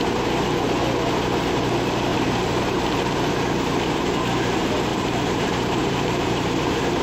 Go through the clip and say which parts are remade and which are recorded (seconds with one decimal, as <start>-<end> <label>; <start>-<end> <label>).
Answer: 0.0-2.1 recorded; 2.1-3.0 remade; 3.0-4.9 recorded; 4.9-7.0 remade